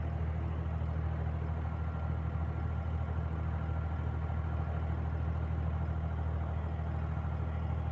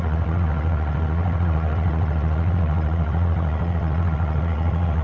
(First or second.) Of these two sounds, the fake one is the second